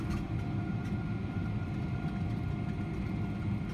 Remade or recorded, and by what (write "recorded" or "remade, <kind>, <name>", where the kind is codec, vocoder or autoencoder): recorded